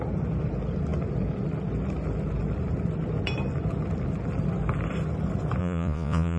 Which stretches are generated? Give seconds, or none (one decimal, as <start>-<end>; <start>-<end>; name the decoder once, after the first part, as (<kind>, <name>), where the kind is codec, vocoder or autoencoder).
5.6-6.4 (vocoder, Vocos)